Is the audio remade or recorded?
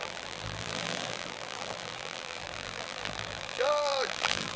remade